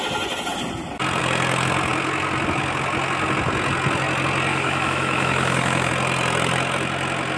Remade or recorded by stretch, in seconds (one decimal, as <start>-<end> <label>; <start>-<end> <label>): 0.0-4.5 recorded; 4.5-5.9 remade; 5.9-7.4 recorded

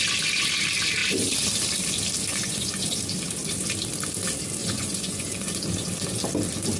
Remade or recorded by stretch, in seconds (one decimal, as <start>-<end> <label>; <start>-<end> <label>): 0.0-2.3 recorded; 2.3-3.0 remade; 3.0-4.6 recorded; 4.6-5.6 remade; 5.6-6.8 recorded

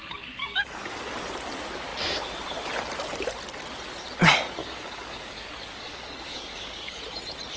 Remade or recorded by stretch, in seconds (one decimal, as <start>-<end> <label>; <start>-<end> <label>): 0.0-1.1 remade; 1.1-4.6 recorded; 4.6-7.0 remade; 7.0-7.6 recorded

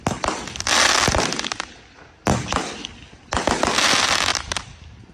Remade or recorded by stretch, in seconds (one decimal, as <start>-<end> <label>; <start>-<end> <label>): 0.0-4.3 recorded; 4.3-5.1 remade